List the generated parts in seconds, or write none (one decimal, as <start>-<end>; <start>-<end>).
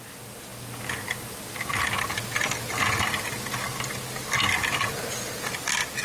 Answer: none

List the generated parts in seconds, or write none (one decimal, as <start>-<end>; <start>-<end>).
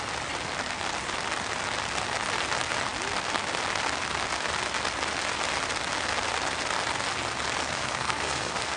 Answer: 7.6-8.8